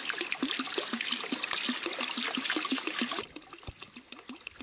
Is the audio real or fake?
real